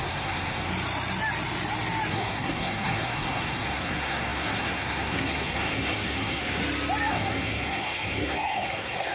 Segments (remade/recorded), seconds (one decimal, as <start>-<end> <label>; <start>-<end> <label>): 0.0-0.7 remade; 0.7-2.1 recorded; 2.1-6.6 remade; 6.6-7.1 recorded; 7.1-9.1 remade